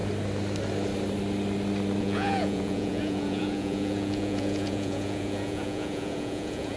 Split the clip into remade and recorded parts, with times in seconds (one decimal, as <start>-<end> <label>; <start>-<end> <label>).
0.0-2.0 recorded; 2.0-6.8 remade